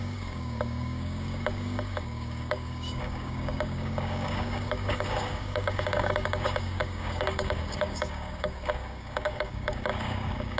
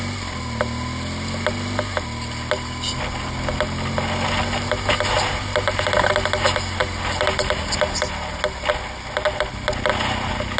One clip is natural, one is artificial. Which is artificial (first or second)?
first